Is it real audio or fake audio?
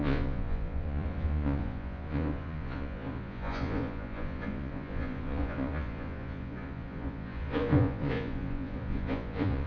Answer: fake